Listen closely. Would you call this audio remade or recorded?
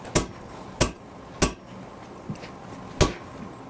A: recorded